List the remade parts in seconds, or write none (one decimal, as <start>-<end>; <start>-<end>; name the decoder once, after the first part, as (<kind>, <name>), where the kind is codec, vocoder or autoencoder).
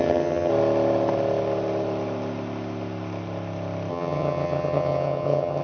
0.0-0.5 (vocoder, HiFi-GAN); 3.9-5.6